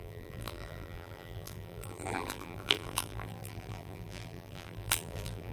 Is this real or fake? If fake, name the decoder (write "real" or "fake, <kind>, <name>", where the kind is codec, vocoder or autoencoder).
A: fake, vocoder, BigVGAN v2